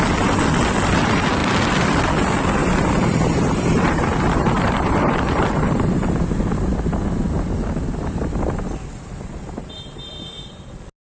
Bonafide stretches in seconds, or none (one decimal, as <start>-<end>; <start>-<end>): 0.0-2.6; 6.4-9.6; 10.7-11.2